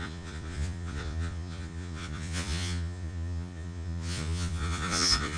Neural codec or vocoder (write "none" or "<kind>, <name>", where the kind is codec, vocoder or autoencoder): vocoder, Vocos